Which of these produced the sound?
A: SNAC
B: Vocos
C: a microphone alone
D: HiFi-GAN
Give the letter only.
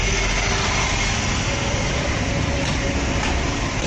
C